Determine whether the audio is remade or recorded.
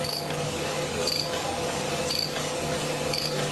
remade